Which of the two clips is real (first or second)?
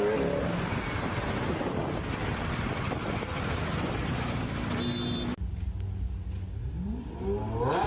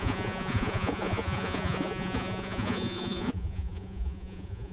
first